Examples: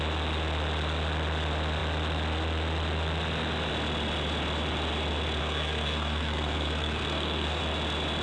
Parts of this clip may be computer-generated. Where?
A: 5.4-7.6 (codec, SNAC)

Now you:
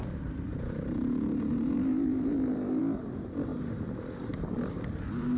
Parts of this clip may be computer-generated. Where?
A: 0.5-2.8 (vocoder, BigVGAN v2)

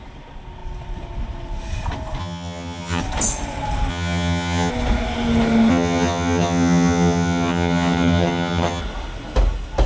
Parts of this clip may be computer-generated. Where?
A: 2.2-3.0 (vocoder, HiFi-GAN); 3.9-4.7; 5.7-8.8

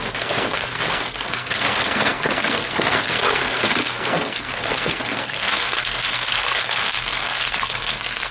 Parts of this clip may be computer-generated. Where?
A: 0.0-8.3 (codec, SNAC)

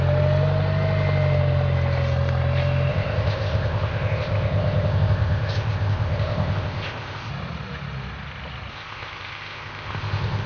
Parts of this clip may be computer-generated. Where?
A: 2.9-7.3 (codec, ZipCodec); 8.7-10.5

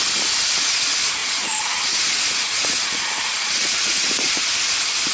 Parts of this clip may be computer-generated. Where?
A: 1.2-4.3 (vocoder, Vocos)

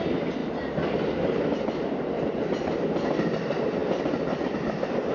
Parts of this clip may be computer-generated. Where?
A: 0.4-1.5 (vocoder, BigVGAN v2)